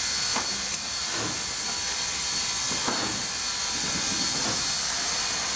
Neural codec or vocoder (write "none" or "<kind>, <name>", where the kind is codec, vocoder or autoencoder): none